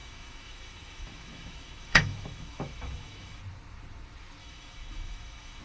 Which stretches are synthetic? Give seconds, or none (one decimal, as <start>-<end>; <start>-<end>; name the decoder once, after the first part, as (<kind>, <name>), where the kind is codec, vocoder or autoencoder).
0.0-3.4 (autoencoder, DAC-VAE); 4.4-5.6